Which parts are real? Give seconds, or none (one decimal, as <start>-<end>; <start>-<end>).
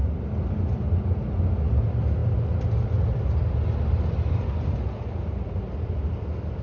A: 0.0-6.6